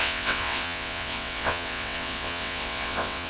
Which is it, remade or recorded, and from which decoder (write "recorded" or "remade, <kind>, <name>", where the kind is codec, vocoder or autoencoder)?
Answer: remade, vocoder, WaveNeXt